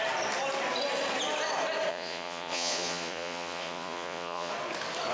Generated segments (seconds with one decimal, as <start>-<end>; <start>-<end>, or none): 1.9-4.5